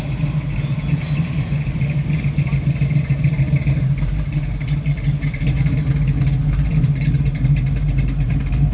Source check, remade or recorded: remade